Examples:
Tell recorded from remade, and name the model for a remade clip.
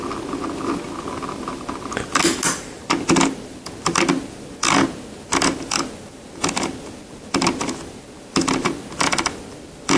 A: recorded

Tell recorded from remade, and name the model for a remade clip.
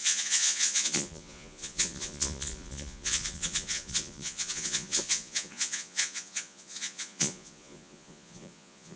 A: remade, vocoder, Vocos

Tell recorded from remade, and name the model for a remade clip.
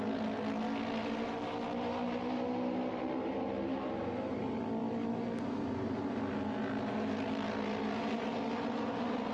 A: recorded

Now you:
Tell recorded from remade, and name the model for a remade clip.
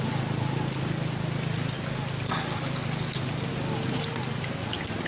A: recorded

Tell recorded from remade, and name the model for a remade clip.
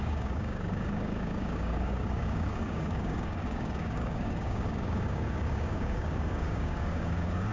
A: remade, codec, DAC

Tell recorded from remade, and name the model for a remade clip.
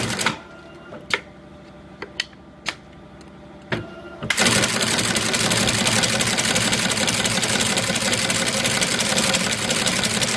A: recorded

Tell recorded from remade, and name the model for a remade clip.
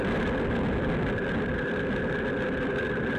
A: recorded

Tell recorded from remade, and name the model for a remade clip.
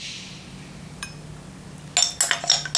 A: recorded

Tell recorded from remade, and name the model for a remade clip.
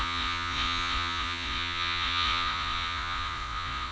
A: remade, vocoder, Vocos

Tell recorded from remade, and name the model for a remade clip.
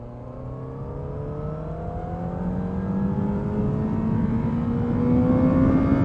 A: recorded